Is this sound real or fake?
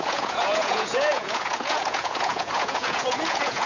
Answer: fake